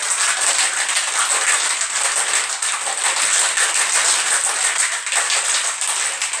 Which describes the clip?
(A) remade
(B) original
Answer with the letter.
B